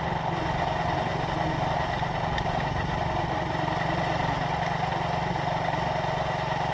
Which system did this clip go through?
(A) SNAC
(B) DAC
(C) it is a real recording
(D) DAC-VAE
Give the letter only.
C